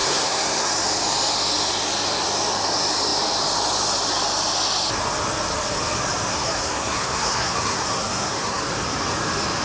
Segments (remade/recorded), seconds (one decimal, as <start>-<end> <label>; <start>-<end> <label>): 0.0-0.7 remade; 0.7-6.3 recorded; 6.3-8.6 remade; 8.6-9.6 recorded

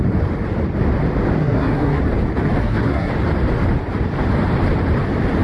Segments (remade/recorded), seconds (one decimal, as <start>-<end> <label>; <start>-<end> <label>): 0.0-1.4 recorded; 1.4-2.0 remade; 2.0-2.6 recorded; 2.6-3.1 remade; 3.1-5.4 recorded